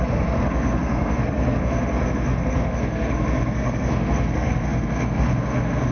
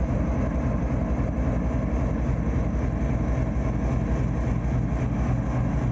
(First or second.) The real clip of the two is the second